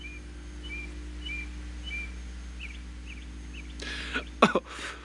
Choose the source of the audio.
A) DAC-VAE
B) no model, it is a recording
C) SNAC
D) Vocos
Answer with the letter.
B